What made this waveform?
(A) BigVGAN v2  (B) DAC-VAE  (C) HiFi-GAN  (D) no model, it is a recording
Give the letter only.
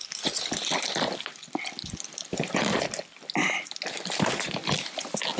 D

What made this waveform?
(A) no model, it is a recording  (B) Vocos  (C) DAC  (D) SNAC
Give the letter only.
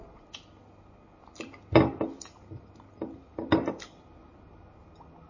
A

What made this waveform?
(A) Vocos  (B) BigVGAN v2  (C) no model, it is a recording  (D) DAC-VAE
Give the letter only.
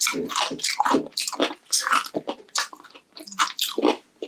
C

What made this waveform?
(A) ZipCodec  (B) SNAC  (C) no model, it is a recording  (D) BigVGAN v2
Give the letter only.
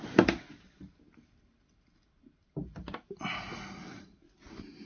C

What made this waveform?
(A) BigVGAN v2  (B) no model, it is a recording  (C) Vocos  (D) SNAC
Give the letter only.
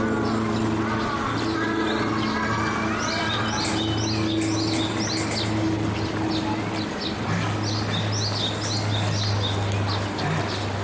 B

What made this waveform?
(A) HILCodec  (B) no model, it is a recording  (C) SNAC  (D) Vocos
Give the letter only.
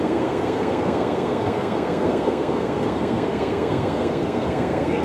C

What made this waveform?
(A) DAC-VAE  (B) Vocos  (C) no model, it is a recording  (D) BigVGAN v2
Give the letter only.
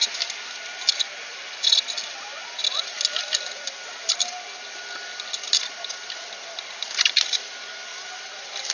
C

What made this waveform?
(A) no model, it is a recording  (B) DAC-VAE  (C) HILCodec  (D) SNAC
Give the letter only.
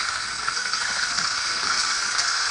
D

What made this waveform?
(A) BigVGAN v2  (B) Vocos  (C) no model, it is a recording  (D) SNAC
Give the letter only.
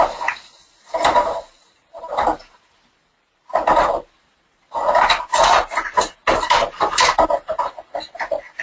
C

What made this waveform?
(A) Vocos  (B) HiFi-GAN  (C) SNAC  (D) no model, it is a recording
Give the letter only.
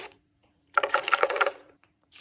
A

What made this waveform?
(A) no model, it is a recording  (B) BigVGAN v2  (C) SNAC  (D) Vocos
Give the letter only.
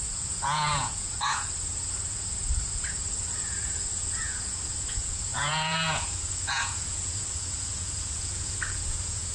D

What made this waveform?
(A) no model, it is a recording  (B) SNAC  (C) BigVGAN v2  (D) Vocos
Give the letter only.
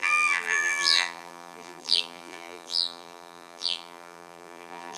C